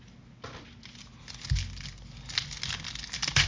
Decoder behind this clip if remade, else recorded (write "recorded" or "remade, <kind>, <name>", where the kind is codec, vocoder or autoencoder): recorded